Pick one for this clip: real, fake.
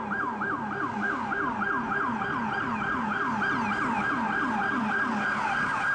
real